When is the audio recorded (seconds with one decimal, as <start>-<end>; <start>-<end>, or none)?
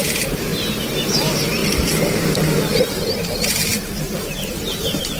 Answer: 3.7-4.5